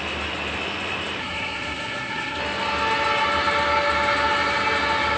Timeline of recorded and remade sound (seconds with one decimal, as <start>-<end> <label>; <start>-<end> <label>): 0.0-1.2 recorded; 1.2-2.4 remade; 2.4-5.2 recorded